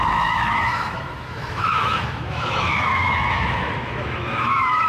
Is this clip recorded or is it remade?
remade